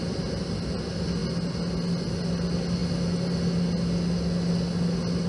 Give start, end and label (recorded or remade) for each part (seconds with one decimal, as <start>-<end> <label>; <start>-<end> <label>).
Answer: 0.0-5.3 recorded